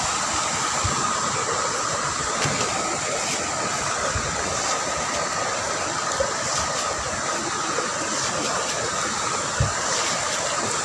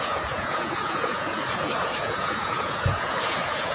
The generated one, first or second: second